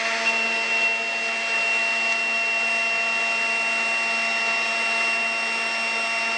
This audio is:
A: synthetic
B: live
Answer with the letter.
B